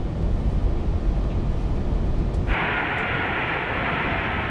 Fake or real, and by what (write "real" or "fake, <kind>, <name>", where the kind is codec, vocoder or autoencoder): real